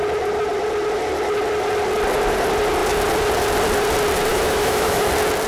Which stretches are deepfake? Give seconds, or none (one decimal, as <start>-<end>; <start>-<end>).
4.3-5.1